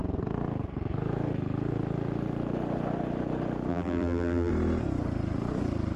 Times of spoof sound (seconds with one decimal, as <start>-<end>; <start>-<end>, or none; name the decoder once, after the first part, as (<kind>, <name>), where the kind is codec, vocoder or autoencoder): 3.7-4.5 (vocoder, BigVGAN v2)